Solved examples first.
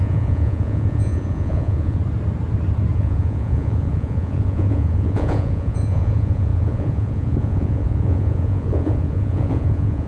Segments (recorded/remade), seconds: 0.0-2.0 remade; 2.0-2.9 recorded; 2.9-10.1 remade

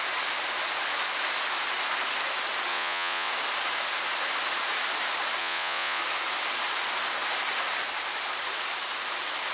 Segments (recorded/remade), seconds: 0.0-2.7 recorded; 2.7-3.3 remade; 3.3-5.4 recorded; 5.4-6.0 remade; 6.0-9.5 recorded